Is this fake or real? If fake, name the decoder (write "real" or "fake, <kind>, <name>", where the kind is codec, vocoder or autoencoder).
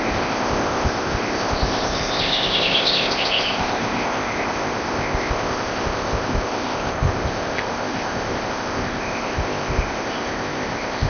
fake, codec, ZipCodec